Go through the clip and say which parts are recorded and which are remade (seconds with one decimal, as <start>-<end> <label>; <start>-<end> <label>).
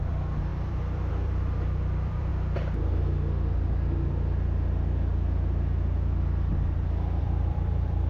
0.0-2.3 remade; 2.3-7.2 recorded; 7.2-8.1 remade